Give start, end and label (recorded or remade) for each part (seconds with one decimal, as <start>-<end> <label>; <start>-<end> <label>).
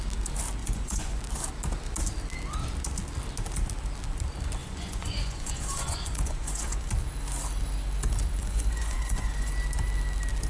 0.0-0.6 recorded; 0.6-1.2 remade; 1.2-4.6 recorded; 4.6-6.9 remade; 6.9-8.4 recorded; 8.4-9.5 remade; 9.5-10.5 recorded